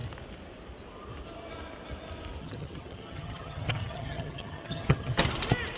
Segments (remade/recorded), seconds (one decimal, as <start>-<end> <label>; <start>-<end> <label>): 0.0-2.4 recorded; 2.4-5.2 remade; 5.2-5.8 recorded